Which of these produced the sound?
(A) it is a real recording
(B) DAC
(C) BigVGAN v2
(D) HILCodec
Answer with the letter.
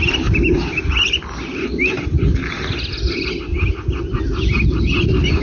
A